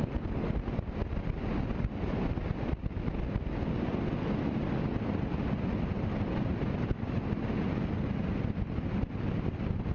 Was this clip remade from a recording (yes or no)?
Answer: no